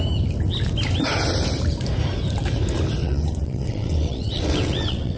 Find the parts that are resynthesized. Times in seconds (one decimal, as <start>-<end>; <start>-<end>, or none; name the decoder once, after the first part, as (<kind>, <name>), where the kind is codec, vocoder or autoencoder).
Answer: 3.0-5.2 (vocoder, WaveNeXt)

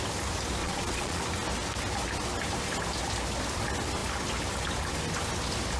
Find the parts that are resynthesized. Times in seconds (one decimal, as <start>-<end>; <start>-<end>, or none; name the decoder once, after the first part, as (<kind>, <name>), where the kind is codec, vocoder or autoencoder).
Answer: 0.6-1.2 (vocoder, Vocos)

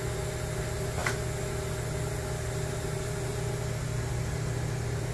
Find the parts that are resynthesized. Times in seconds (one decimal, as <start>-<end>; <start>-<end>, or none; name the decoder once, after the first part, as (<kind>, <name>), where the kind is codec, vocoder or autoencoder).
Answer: none

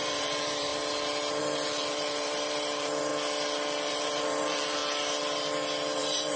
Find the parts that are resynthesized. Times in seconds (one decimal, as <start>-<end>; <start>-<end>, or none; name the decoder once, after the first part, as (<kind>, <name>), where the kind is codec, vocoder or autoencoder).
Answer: 0.0-0.7 (vocoder, BigVGAN v2); 1.4-3.1; 3.9-4.8; 6.0-6.4

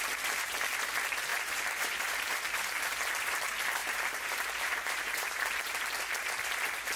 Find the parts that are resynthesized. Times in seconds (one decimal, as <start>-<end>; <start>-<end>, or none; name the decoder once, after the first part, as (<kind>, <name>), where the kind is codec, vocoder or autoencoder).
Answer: 1.3-2.3 (vocoder, BigVGAN v2); 3.8-5.8